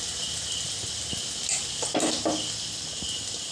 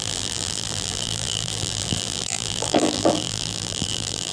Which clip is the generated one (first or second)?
second